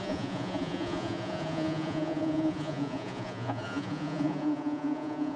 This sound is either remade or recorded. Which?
remade